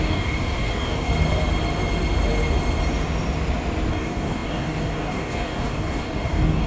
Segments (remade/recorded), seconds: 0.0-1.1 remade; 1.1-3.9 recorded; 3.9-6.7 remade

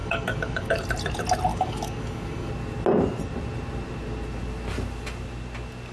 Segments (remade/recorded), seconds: 0.0-0.8 remade; 0.8-1.5 recorded; 1.5-2.5 remade; 2.5-5.9 recorded

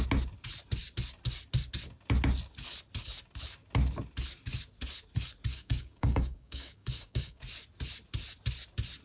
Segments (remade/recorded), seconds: 0.0-5.5 recorded; 5.5-7.4 remade; 7.4-9.0 recorded

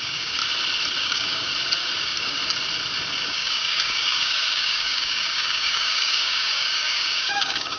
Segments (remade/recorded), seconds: 0.0-0.4 remade; 0.4-1.0 recorded; 1.0-1.5 remade; 1.5-2.0 recorded; 2.0-2.4 remade; 2.4-3.2 recorded; 3.2-7.8 remade

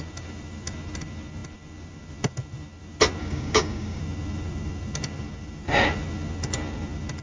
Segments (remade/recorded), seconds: 0.0-3.2 recorded; 3.2-4.0 remade; 4.0-7.2 recorded

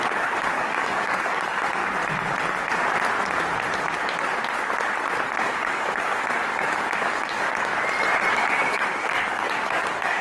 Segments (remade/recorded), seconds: 0.0-1.8 remade; 1.8-5.4 recorded; 5.4-7.7 remade; 7.7-8.3 recorded; 8.3-10.2 remade

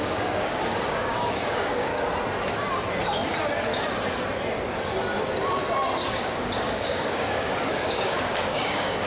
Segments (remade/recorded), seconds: 0.0-1.9 remade; 1.9-6.1 recorded; 6.1-9.1 remade